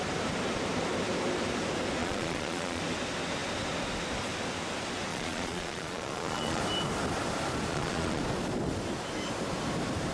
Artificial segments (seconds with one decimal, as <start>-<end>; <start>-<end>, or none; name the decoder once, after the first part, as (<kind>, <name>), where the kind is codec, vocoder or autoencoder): 2.0-2.8 (vocoder, Vocos); 5.1-6.6; 7.7-8.2